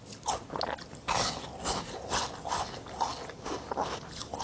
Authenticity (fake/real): real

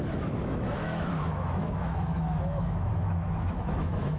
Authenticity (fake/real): fake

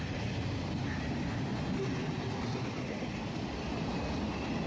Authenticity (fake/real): real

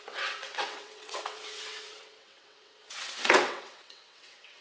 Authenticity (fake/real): fake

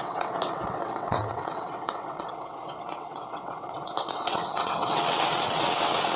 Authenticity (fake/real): fake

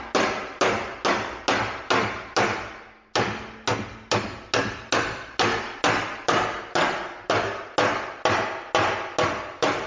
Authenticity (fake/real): real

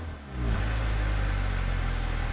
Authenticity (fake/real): real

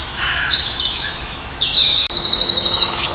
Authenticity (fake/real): fake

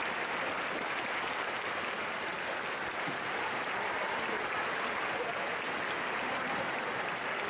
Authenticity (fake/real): real